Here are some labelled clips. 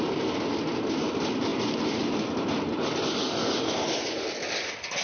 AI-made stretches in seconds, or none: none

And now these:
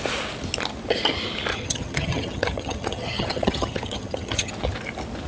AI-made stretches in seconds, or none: 1.5-4.5 (vocoder, HiFi-GAN)

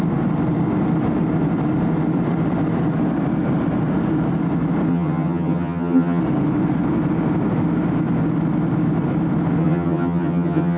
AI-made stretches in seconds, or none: 4.9-6.2 (vocoder, HiFi-GAN); 9.6-10.8